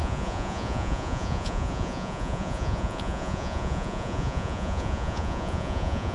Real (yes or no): no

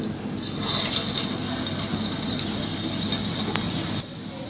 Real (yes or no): yes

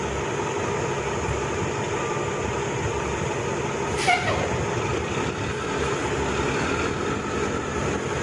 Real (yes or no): yes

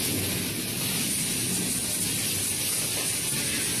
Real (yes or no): yes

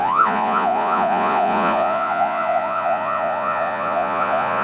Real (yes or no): no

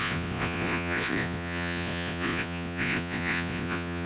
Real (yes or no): no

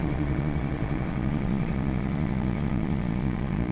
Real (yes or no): no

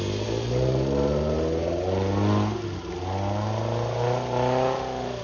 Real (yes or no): yes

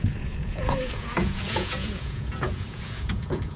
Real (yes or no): no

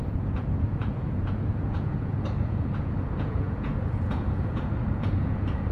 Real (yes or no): no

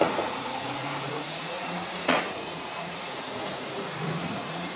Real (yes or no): no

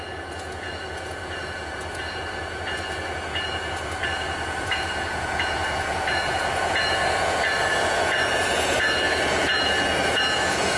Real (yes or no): no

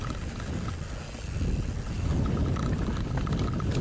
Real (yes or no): yes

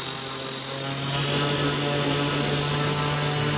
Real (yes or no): yes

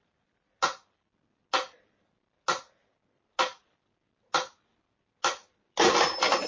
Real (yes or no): yes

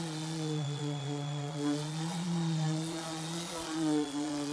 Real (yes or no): no